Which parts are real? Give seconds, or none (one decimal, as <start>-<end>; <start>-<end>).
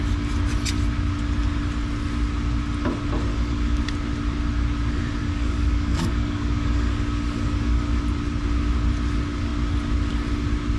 0.0-3.3; 3.8-5.2; 8.0-10.8